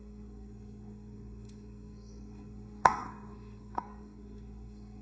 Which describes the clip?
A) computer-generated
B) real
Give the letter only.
A